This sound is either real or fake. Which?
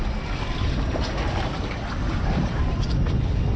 real